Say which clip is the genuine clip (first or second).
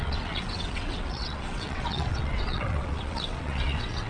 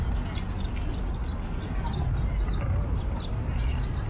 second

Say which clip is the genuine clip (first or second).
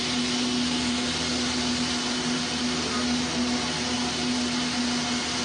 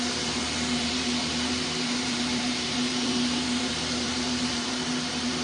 first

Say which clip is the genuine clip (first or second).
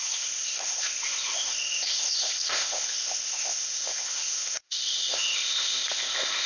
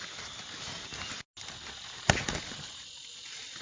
second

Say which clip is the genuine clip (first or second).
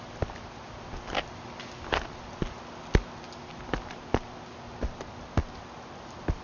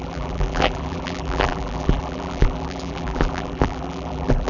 first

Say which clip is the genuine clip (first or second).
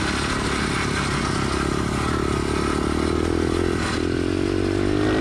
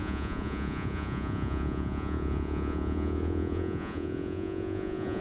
first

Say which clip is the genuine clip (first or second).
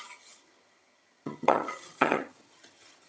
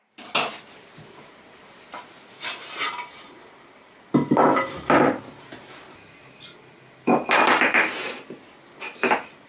second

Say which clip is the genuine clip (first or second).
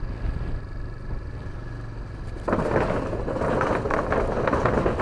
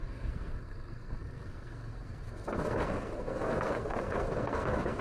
first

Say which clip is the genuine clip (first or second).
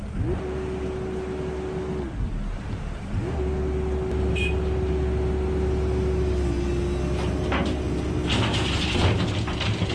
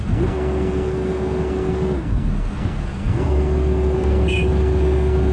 first